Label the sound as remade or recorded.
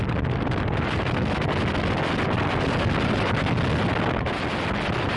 recorded